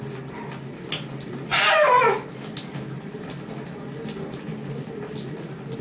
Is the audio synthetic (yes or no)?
no